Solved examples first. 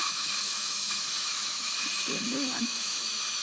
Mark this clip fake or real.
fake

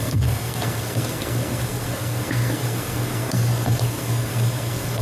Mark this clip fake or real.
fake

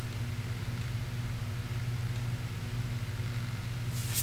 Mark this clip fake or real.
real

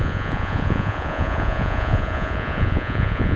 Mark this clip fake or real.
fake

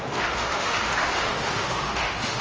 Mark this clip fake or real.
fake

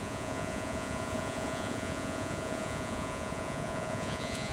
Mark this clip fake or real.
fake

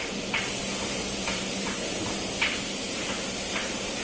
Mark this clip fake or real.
real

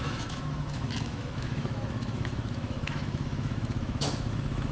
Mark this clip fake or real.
fake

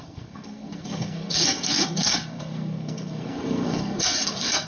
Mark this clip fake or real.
fake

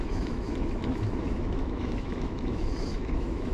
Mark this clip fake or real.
fake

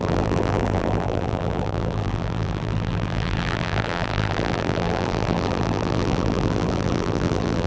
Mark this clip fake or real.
fake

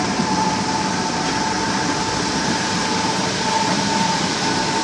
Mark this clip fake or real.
fake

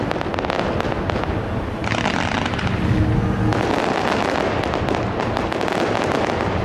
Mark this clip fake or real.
real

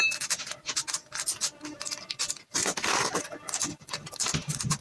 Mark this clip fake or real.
real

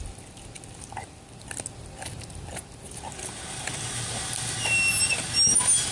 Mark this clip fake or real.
real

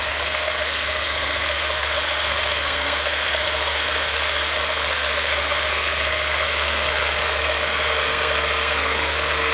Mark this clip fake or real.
fake